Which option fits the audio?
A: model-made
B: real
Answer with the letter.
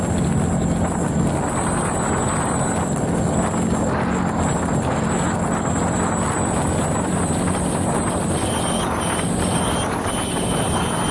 B